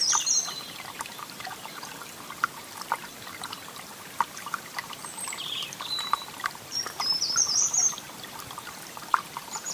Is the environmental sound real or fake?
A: fake